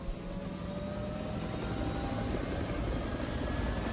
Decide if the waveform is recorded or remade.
recorded